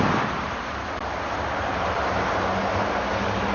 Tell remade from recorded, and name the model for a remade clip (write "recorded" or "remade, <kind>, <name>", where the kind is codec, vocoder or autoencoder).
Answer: recorded